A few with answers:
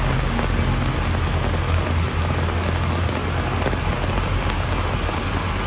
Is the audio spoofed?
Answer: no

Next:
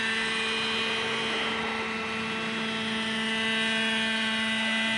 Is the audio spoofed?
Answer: no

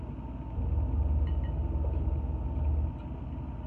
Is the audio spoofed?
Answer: no